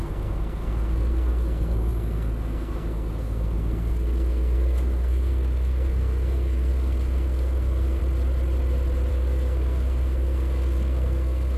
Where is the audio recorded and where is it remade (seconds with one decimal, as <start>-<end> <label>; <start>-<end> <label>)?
0.0-8.0 remade; 8.0-9.1 recorded; 9.1-11.6 remade